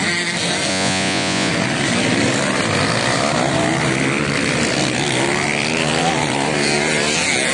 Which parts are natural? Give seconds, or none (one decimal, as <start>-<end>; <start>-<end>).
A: 0.0-0.7; 1.5-7.5